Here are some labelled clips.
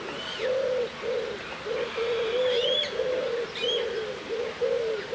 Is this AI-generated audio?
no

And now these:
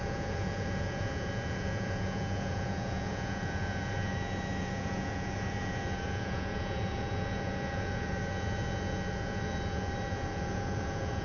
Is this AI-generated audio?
yes